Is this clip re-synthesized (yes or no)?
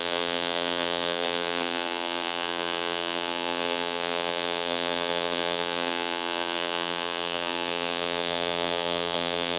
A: yes